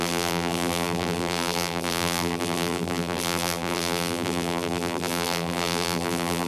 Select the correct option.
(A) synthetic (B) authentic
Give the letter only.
A